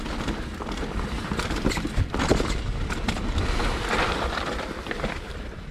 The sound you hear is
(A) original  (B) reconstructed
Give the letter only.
A